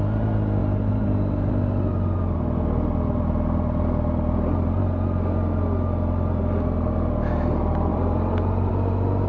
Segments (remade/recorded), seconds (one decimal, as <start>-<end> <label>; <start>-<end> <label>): 0.0-0.6 recorded; 0.6-1.5 remade; 1.5-7.9 recorded; 7.9-8.7 remade; 8.7-9.3 recorded